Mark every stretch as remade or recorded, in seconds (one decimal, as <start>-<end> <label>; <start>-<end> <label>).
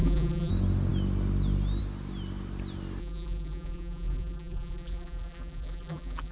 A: 0.0-0.5 remade; 0.5-3.0 recorded; 3.0-6.3 remade